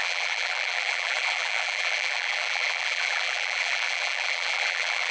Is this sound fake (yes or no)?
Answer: yes